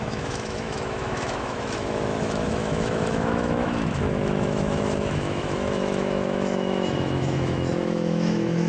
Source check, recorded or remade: remade